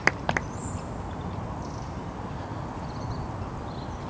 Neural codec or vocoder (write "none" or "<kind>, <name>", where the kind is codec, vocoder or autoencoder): none